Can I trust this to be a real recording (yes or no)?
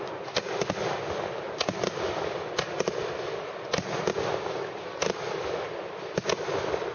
yes